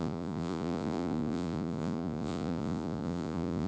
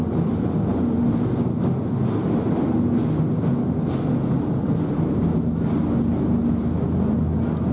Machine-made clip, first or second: first